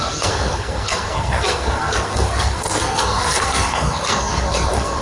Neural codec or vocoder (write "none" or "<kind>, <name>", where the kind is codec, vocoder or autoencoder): codec, SNAC